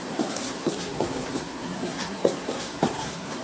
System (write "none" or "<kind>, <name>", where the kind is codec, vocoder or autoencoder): codec, SNAC